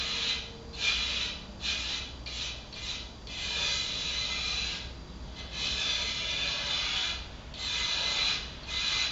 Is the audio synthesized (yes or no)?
no